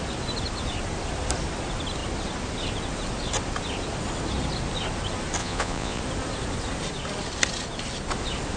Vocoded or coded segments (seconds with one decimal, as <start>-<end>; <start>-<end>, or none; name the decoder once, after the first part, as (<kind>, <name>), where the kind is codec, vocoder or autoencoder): 5.4-6.0 (vocoder, Vocos)